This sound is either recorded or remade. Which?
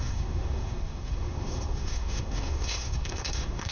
remade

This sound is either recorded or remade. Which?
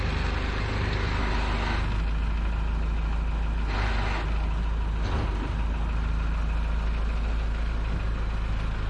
recorded